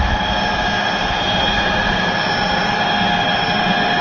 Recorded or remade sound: recorded